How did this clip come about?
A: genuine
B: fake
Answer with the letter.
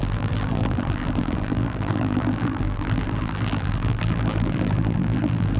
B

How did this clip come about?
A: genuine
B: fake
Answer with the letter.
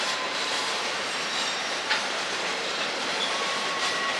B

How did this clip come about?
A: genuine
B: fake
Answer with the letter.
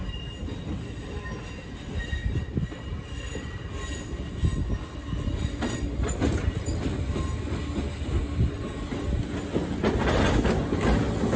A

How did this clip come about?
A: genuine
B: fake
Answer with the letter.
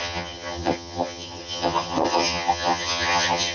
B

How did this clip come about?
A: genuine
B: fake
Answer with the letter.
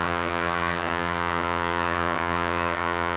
B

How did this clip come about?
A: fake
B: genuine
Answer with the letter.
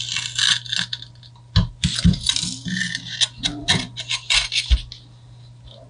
B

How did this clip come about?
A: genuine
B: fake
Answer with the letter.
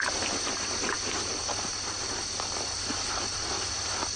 A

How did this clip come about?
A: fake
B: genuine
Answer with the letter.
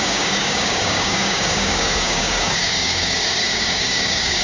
A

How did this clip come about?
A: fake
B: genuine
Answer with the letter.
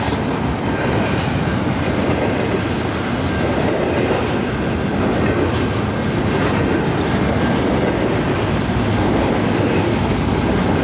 B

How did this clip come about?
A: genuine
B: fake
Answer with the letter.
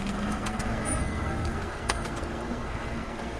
B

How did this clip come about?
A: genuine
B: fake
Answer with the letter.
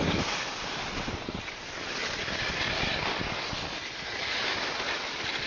A